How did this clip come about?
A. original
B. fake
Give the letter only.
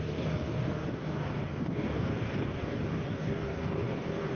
B